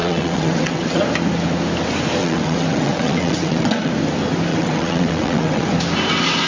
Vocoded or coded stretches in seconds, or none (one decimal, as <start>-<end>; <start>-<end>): 0.0-1.0; 2.2-3.9; 4.5-5.7

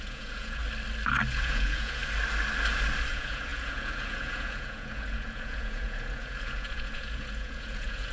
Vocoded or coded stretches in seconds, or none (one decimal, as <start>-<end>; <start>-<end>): 0.0-0.6; 1.3-2.0; 3.1-8.1

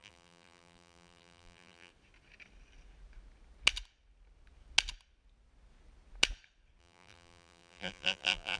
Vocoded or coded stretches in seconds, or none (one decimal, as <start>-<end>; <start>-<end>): 0.0-1.9; 6.8-8.6